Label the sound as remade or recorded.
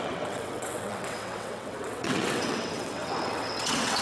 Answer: remade